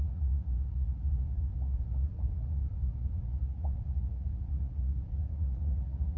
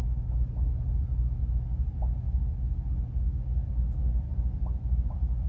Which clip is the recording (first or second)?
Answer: second